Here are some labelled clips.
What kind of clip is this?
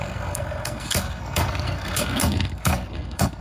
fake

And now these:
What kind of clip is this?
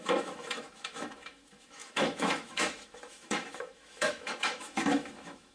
fake